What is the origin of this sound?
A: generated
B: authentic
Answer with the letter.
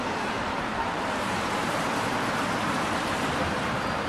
A